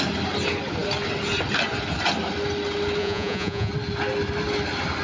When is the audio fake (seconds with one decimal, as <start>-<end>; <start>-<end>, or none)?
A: 3.0-3.7